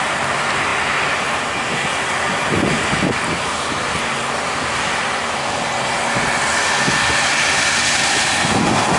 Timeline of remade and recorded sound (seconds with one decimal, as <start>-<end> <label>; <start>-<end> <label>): 0.0-9.0 recorded